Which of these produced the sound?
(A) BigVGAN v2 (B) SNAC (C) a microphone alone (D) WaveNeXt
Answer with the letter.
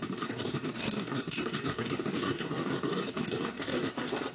B